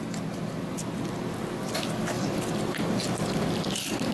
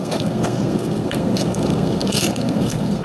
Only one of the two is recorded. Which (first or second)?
first